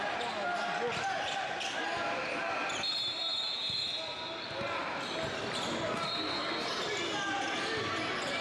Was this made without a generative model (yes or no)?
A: yes